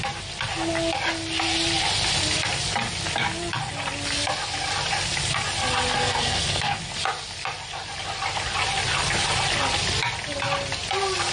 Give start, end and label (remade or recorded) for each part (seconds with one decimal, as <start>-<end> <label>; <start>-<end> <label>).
0.0-6.0 recorded; 6.0-6.8 remade; 6.8-11.3 recorded